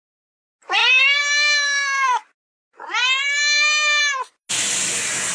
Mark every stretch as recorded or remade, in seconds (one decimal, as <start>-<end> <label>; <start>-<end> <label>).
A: 0.0-5.3 recorded